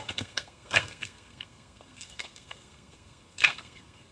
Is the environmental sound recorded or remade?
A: remade